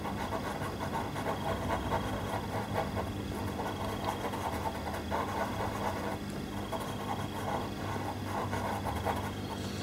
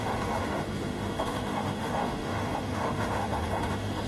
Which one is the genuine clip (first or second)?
first